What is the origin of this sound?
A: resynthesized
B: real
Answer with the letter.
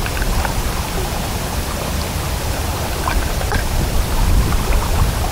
B